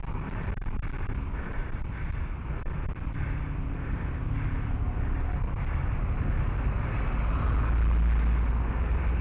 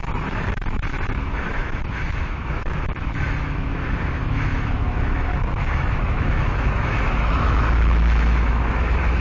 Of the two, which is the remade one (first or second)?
second